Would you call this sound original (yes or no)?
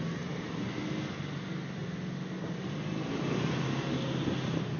yes